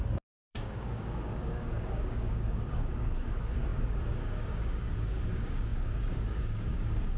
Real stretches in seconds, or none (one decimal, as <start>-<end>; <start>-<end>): none